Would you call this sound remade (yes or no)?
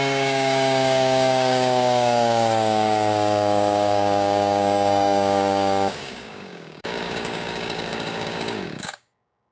yes